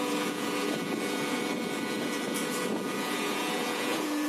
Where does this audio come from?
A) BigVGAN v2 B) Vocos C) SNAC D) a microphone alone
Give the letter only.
B